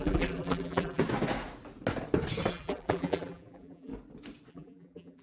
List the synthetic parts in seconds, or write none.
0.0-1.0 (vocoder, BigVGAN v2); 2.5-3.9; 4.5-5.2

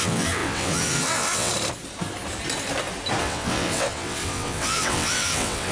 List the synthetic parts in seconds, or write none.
0.0-1.5 (vocoder, WaveNeXt); 3.2-5.7

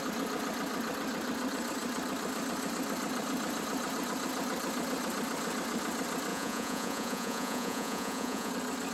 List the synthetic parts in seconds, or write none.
6.3-8.5 (vocoder, Vocos)

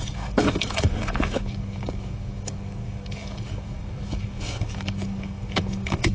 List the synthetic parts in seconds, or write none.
0.0-6.1 (codec, DAC)